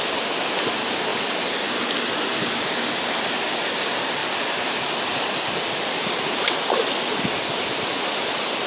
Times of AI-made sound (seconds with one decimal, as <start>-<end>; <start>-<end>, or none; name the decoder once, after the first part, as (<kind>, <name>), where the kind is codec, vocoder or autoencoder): none